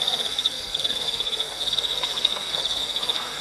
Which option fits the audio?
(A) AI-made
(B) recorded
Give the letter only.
A